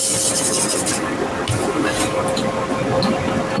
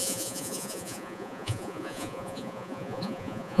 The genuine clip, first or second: first